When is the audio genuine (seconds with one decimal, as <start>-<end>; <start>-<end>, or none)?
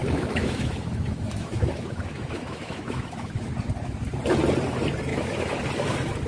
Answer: 3.5-5.1; 5.6-6.3